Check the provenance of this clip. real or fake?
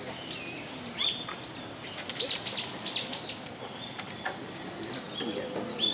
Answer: real